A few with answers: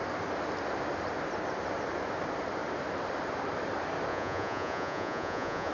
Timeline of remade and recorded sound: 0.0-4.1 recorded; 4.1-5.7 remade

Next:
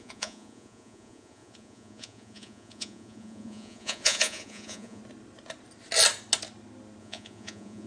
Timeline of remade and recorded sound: 0.0-5.0 remade; 5.0-7.0 recorded; 7.0-7.9 remade

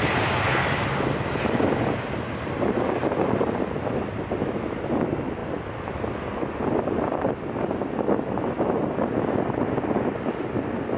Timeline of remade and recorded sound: 0.0-11.0 recorded